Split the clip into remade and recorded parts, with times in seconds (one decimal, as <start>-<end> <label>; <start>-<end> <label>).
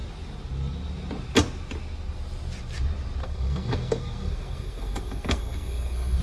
0.0-3.2 recorded; 3.2-6.2 remade